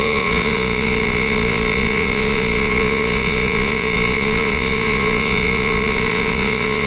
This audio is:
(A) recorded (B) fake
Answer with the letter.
B